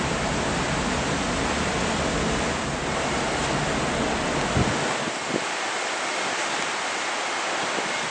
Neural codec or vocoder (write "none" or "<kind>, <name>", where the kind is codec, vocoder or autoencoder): none